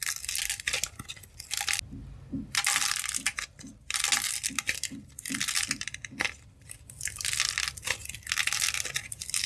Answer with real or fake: real